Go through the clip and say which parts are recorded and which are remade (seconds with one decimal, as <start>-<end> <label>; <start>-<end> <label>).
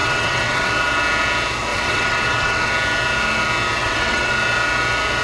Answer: 0.0-0.7 remade; 0.7-1.7 recorded; 1.7-2.7 remade; 2.7-3.8 recorded; 3.8-4.3 remade; 4.3-5.2 recorded